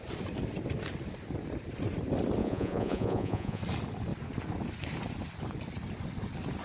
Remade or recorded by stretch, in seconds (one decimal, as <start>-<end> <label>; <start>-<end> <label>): 0.0-2.4 recorded; 2.4-3.6 remade; 3.6-6.6 recorded